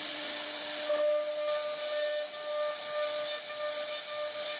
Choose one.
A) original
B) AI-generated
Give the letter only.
A